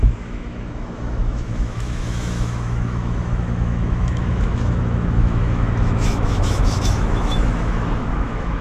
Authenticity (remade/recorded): remade